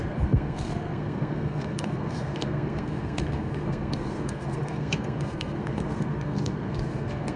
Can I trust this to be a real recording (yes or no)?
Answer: no